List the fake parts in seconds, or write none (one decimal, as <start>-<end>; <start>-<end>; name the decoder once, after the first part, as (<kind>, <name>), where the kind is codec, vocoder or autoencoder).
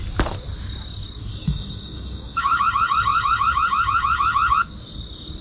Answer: 1.3-2.6 (codec, DAC)